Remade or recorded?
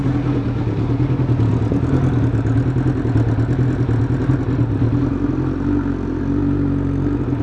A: recorded